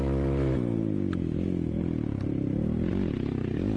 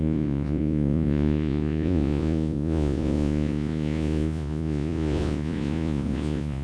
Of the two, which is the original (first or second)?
first